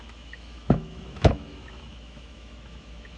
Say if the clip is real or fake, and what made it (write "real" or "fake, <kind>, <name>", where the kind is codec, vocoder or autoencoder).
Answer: fake, autoencoder, DAC-VAE